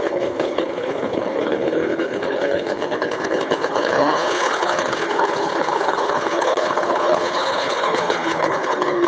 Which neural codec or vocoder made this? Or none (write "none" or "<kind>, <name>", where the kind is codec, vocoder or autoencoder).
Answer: codec, HILCodec